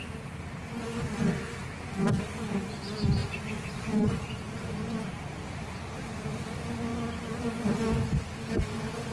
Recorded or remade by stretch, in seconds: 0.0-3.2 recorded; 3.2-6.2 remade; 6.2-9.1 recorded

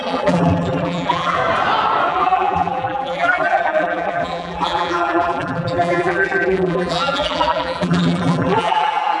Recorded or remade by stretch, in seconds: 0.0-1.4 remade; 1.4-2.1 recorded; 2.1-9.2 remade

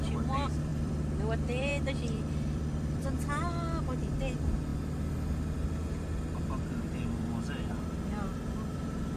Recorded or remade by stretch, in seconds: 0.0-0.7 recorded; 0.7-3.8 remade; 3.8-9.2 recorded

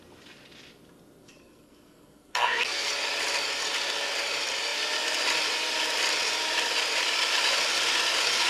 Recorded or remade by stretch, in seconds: 0.0-1.2 recorded; 1.2-2.9 remade; 2.9-8.5 recorded

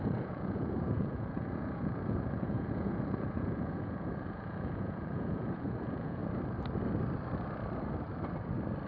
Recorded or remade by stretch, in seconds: 0.0-6.2 remade; 6.2-8.9 recorded

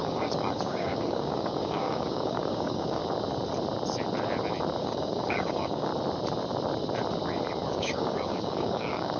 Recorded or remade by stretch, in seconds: 0.0-3.0 remade; 3.0-4.8 recorded; 4.8-5.9 remade; 5.9-7.7 recorded; 7.7-9.2 remade

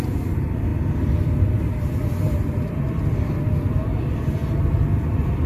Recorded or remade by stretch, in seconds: 0.0-5.5 recorded